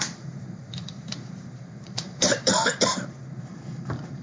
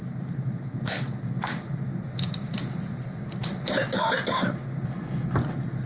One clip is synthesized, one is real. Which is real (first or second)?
second